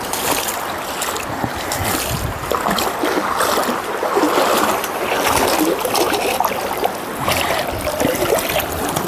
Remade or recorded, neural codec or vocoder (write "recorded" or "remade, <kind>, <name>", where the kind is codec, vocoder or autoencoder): recorded